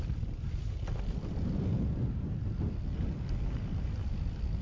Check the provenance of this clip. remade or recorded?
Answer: recorded